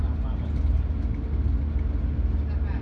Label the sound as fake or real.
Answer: real